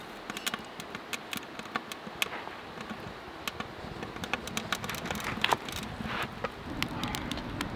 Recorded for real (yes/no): yes